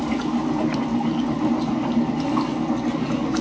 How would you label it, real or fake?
real